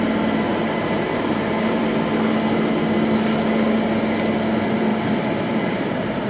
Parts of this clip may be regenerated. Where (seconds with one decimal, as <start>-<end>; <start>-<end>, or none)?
0.5-1.8; 4.9-6.3